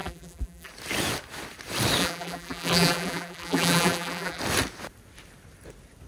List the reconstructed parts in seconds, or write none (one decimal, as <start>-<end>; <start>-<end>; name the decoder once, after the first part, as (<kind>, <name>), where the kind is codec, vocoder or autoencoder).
0.0-0.7 (vocoder, BigVGAN v2); 2.0-4.4